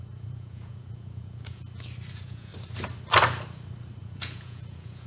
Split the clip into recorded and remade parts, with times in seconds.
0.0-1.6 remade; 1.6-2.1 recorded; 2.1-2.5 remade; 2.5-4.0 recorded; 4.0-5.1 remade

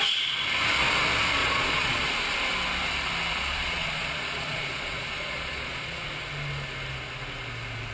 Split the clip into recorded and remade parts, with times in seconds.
0.0-1.4 recorded; 1.4-2.0 remade; 2.0-3.3 recorded; 3.3-6.0 remade; 6.0-7.9 recorded